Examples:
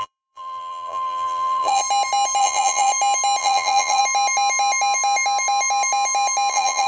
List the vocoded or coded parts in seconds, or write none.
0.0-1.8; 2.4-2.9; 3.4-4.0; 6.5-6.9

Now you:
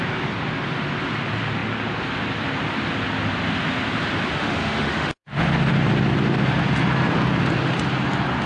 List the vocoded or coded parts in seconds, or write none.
4.4-5.4

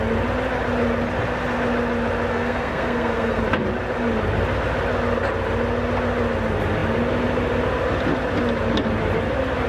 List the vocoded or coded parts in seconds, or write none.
2.3-3.4

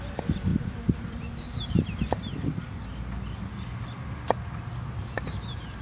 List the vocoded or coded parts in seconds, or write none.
0.0-2.9; 4.3-5.8

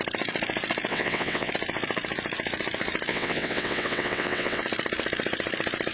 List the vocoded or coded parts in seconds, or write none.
0.9-1.5; 3.1-4.6

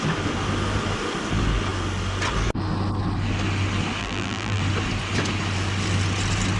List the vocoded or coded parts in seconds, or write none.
4.0-4.6